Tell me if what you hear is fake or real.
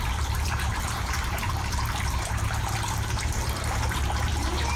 fake